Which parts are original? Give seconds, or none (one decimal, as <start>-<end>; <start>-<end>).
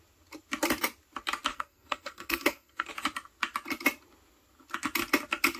0.0-1.5; 2.9-5.6